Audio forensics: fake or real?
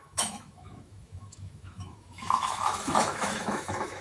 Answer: fake